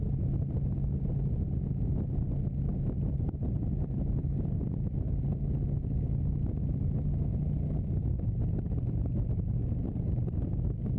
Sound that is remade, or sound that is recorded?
recorded